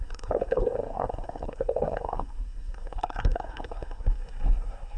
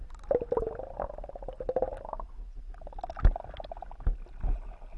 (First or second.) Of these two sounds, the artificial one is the first